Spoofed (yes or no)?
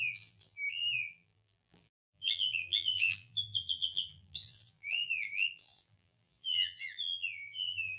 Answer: yes